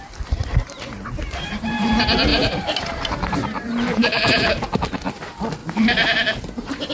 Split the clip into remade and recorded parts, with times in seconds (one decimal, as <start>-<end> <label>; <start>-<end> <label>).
0.0-0.5 recorded; 0.5-1.9 remade; 1.9-2.3 recorded; 2.3-4.5 remade; 4.5-5.6 recorded; 5.6-6.9 remade